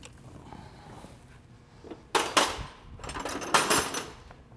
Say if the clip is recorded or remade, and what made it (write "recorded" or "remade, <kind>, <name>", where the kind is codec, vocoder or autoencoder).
recorded